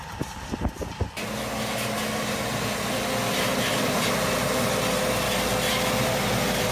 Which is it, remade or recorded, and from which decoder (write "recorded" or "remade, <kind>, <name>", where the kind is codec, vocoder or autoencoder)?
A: recorded